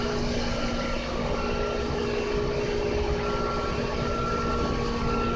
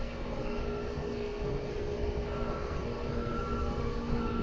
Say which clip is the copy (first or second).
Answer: second